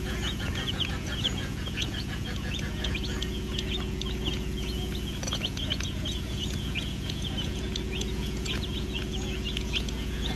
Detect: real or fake fake